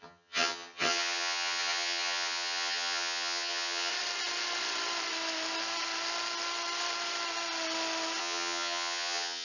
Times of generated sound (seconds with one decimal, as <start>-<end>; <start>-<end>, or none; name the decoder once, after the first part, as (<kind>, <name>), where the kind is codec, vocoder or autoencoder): 0.0-3.9 (vocoder, HiFi-GAN); 8.2-9.4